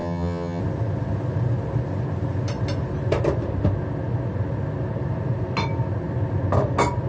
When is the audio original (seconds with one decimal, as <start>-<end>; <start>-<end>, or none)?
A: 0.6-7.1